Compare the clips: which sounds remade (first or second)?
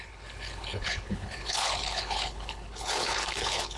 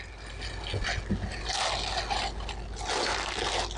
first